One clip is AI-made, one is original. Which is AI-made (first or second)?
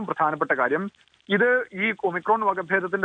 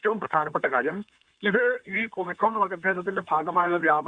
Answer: second